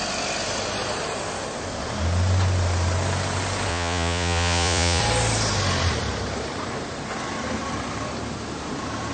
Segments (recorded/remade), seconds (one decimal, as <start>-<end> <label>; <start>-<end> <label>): 0.0-3.7 recorded; 3.7-5.0 remade; 5.0-9.1 recorded